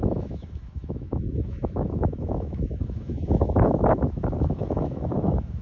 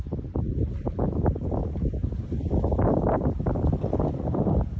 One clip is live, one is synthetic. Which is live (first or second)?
second